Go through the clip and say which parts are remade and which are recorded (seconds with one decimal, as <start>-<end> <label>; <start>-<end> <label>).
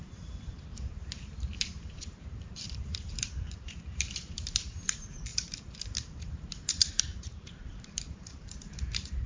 0.0-9.3 remade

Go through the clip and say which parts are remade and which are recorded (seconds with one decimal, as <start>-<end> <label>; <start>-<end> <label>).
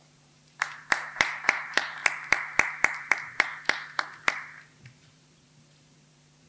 0.0-2.0 remade; 2.0-2.7 recorded; 2.7-3.5 remade; 3.5-4.6 recorded; 4.6-6.5 remade